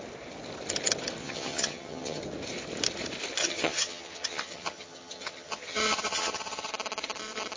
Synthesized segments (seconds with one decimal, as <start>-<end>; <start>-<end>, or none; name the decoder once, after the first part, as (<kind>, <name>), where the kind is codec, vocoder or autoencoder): 1.2-2.2 (vocoder, HiFi-GAN); 3.4-6.7